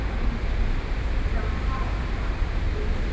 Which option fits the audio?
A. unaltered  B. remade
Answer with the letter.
A